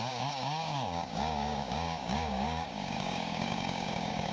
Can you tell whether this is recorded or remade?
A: remade